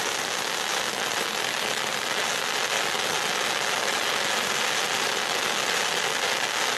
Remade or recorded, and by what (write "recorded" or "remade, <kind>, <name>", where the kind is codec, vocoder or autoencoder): recorded